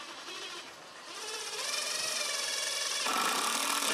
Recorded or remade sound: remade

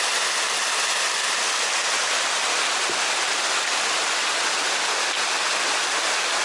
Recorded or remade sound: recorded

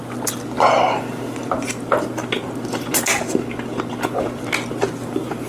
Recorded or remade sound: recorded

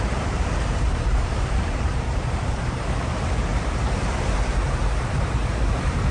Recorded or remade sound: remade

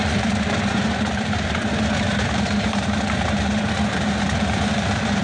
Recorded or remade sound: remade